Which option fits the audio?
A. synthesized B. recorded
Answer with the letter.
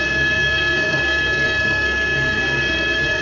A